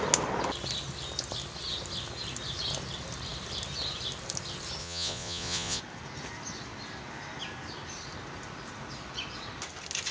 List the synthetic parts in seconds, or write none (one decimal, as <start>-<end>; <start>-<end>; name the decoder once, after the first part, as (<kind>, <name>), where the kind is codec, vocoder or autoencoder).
4.8-5.8 (vocoder, Vocos)